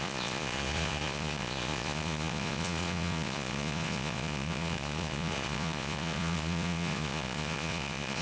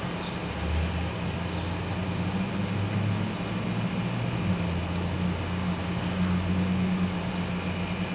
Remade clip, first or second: first